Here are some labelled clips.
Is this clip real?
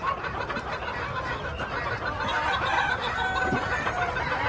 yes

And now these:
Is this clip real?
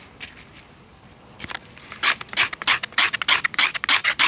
yes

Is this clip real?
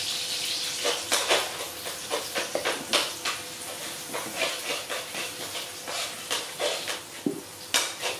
yes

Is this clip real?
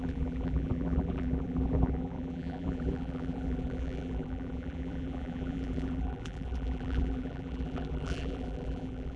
no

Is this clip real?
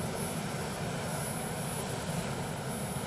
yes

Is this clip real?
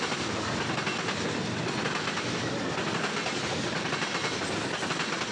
yes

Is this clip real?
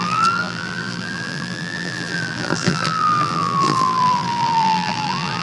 no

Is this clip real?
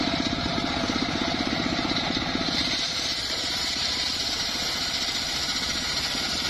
no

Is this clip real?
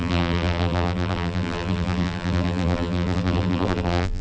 no